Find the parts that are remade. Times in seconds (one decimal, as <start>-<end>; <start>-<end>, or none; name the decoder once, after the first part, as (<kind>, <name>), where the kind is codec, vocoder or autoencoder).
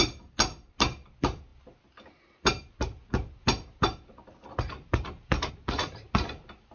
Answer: none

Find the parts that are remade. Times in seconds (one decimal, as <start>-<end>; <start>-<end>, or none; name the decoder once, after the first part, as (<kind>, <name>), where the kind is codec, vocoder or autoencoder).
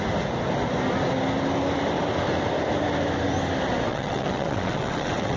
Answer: 3.9-5.4 (vocoder, WaveNeXt)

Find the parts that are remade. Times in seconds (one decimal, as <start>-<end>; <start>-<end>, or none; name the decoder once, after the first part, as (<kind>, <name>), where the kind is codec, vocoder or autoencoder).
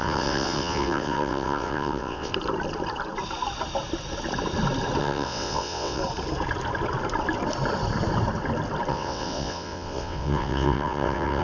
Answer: 0.0-2.3 (vocoder, WaveNeXt); 5.0-6.0; 8.9-11.4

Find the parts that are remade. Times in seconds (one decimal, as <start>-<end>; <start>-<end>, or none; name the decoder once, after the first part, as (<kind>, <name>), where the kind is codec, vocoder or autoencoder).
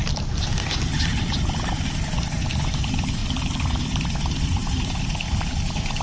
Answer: none